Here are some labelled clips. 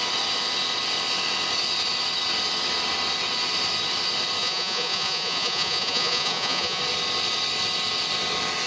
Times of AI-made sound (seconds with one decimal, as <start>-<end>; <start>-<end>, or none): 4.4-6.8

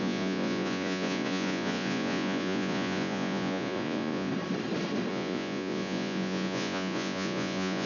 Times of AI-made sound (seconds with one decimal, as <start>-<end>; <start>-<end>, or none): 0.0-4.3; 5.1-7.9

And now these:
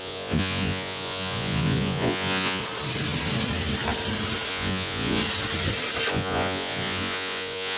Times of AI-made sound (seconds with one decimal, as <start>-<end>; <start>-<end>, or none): 0.0-2.6; 4.5-5.2; 6.1-7.8

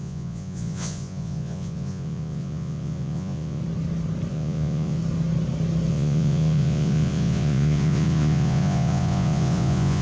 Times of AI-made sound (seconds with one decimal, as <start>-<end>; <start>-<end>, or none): 0.0-3.6; 4.3-5.0; 5.9-10.0

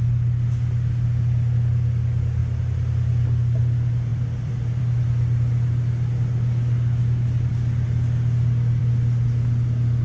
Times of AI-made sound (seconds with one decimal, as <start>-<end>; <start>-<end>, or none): 4.1-4.8

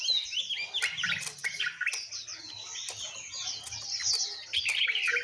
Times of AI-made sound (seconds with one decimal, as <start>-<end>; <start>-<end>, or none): none